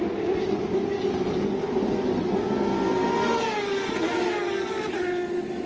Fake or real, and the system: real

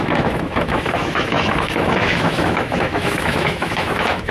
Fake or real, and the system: fake, autoencoder, DAC-VAE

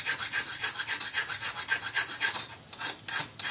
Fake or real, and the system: real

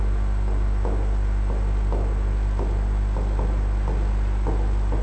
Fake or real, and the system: real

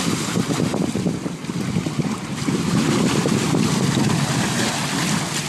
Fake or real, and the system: real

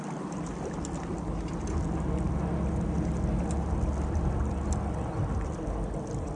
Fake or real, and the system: real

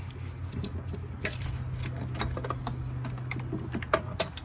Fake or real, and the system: real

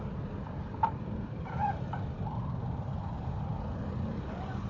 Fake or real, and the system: fake, vocoder, BigVGAN v2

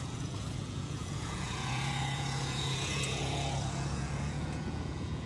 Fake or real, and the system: fake, vocoder, Vocos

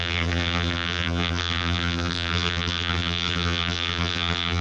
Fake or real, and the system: fake, vocoder, BigVGAN v2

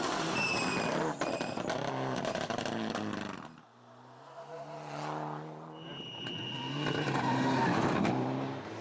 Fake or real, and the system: real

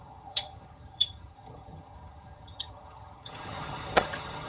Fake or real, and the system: fake, vocoder, HiFi-GAN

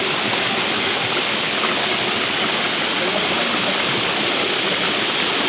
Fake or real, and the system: real